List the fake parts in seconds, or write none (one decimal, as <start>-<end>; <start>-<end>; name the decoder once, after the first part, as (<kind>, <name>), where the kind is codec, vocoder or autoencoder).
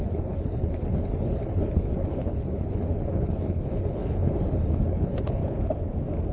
0.0-5.4 (codec, HILCodec)